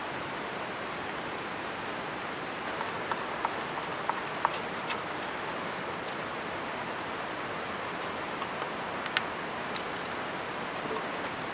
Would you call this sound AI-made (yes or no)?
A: no